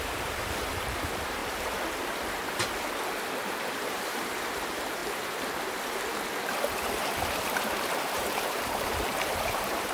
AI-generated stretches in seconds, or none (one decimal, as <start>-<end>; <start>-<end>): 0.0-1.4; 3.3-5.0; 8.0-9.9